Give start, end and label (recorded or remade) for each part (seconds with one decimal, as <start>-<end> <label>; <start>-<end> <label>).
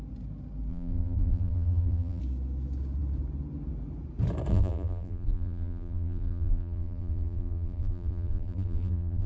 0.0-0.7 recorded; 0.7-2.2 remade; 2.2-4.5 recorded; 4.5-9.3 remade